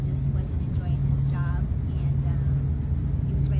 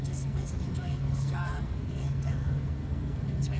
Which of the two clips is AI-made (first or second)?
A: second